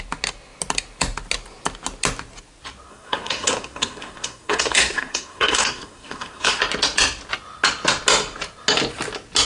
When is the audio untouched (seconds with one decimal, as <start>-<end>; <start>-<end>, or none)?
0.0-2.9; 6.6-9.4